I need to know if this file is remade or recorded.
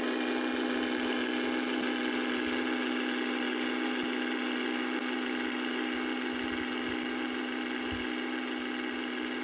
recorded